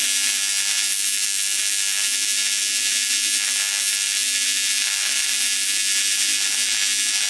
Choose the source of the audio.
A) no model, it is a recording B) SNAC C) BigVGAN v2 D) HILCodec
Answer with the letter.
A